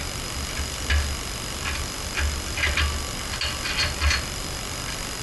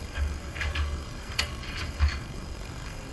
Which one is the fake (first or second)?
second